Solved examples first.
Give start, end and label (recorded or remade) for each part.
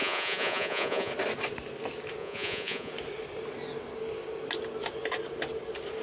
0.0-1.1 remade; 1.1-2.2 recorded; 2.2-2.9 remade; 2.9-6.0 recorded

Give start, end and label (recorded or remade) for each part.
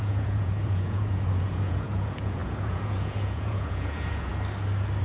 0.0-4.3 remade; 4.3-5.0 recorded